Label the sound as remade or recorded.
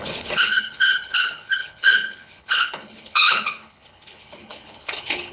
remade